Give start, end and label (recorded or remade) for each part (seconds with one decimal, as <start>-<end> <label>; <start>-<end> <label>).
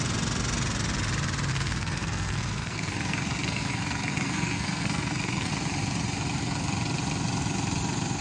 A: 0.0-1.5 recorded; 1.5-5.5 remade; 5.5-8.2 recorded